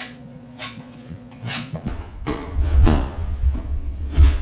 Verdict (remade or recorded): remade